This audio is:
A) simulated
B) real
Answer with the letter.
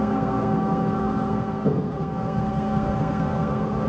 A